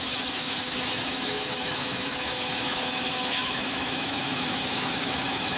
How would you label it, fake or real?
fake